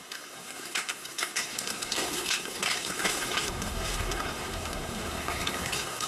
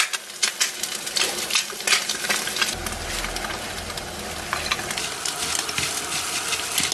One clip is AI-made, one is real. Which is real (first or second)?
second